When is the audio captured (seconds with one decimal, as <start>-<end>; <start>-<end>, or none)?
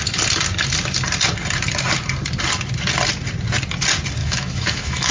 0.0-4.2